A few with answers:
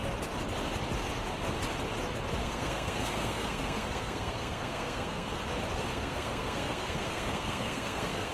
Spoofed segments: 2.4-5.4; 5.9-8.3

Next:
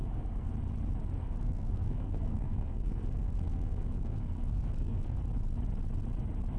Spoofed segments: 0.0-0.5; 1.2-5.2

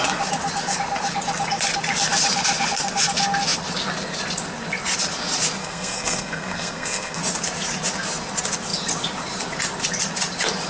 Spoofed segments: 5.6-7.2

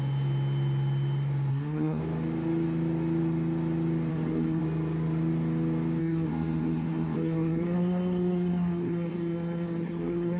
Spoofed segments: 1.5-2.0; 4.1-4.6; 6.0-10.4